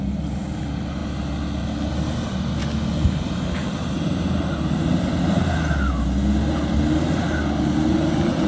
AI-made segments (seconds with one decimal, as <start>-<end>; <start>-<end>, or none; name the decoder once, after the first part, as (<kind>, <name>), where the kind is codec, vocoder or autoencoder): none